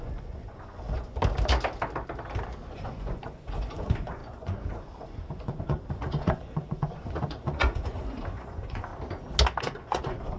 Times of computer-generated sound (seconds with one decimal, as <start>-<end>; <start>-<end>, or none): 0.0-1.1; 2.7-8.9; 9.6-10.4